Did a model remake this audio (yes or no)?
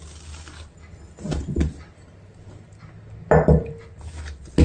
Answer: no